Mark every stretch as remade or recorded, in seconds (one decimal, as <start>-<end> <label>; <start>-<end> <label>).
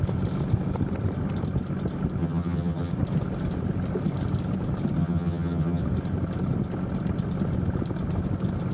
0.0-2.2 recorded; 2.2-2.9 remade; 2.9-5.0 recorded; 5.0-5.8 remade; 5.8-8.7 recorded